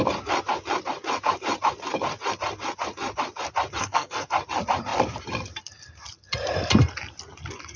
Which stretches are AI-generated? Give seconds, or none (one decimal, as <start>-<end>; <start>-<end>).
3.8-4.3